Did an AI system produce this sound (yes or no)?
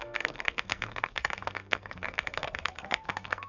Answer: yes